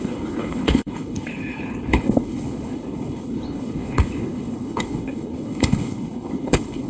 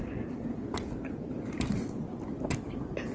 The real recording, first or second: second